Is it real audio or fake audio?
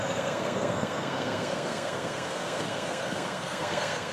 fake